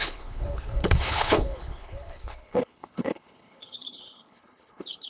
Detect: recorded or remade remade